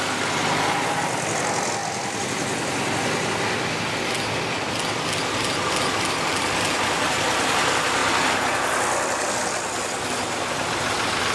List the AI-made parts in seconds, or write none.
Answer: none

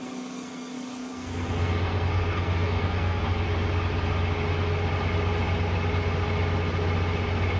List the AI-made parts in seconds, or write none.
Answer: 0.0-3.2 (codec, SNAC)

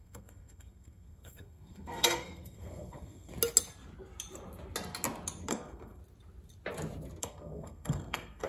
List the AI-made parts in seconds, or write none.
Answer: 0.0-3.3 (codec, SNAC); 5.5-6.0; 7.2-8.5

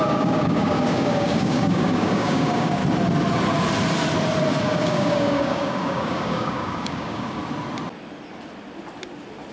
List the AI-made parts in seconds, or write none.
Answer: 0.0-2.8 (codec, DAC); 4.6-7.4

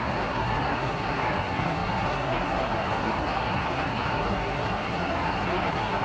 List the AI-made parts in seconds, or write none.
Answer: 0.0-6.0 (codec, SNAC)

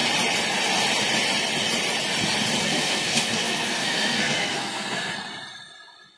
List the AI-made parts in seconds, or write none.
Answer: 2.6-5.1 (codec, SNAC)

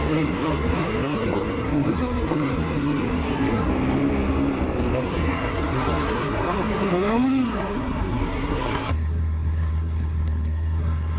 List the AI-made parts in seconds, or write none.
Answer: 0.0-3.7 (codec, SNAC); 5.0-11.2